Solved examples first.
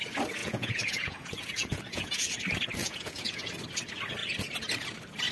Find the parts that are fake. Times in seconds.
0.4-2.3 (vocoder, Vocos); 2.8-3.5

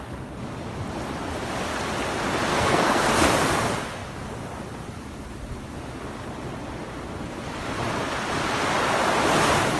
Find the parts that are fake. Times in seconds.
2.5-3.1 (codec, SNAC)

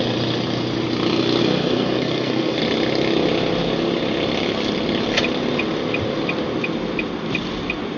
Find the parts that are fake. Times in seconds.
1.4-2.6 (codec, SNAC)

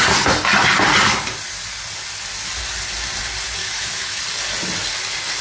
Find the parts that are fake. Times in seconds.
3.6-4.2 (autoencoder, DAC-VAE)

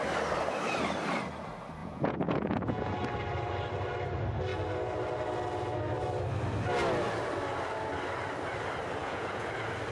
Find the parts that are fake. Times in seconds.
1.8-2.9 (vocoder, Vocos); 9.0-9.5

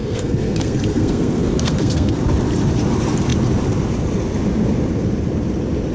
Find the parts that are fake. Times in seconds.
0.0-2.2 (codec, SNAC)